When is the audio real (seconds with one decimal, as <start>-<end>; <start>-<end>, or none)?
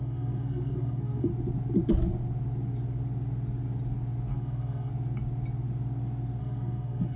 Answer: 1.3-4.3; 4.9-6.4